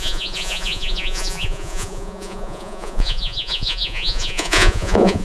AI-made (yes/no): yes